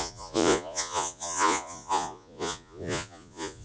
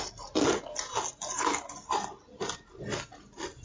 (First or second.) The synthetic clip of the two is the first